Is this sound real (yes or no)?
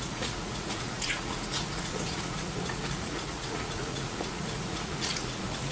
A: no